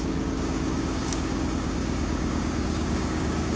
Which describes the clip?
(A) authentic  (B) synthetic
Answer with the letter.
B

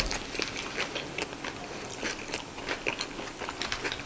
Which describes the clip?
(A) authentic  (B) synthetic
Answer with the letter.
A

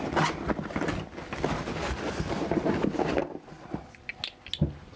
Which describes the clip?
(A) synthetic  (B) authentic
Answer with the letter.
B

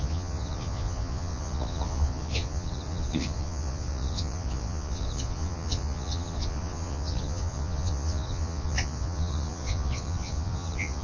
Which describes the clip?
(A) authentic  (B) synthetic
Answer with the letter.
B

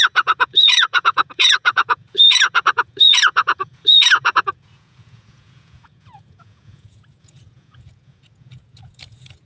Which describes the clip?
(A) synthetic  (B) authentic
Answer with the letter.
A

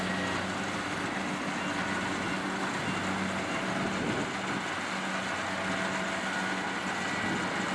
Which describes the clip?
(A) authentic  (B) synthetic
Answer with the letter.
A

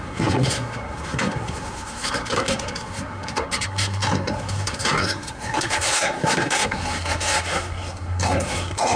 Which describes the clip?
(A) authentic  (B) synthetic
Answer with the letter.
B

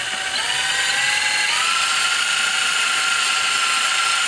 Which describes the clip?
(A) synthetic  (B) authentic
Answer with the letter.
B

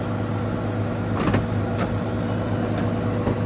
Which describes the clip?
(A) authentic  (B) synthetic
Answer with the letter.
A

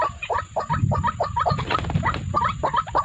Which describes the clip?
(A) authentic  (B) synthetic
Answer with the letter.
B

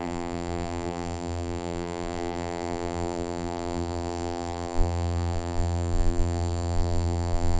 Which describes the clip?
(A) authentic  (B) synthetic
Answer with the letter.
B